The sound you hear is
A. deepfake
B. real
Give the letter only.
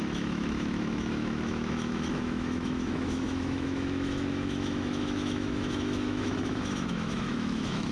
A